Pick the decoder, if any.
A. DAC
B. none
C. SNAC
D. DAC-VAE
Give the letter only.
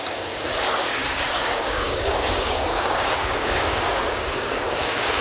A